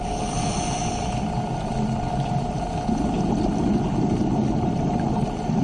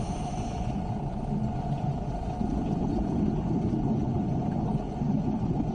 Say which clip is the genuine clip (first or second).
first